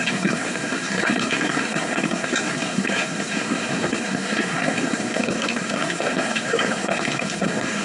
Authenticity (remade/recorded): remade